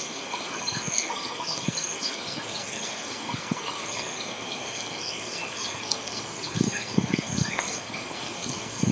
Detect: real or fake fake